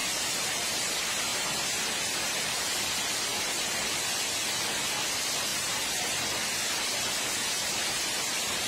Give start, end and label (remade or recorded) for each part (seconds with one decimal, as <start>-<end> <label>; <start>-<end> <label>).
0.0-8.7 recorded